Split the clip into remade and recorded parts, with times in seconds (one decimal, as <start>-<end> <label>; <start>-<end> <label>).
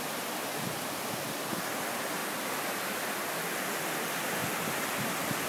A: 0.0-5.5 recorded